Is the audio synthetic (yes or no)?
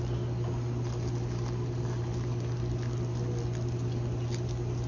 no